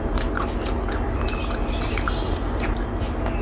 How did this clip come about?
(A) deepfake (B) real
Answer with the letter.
B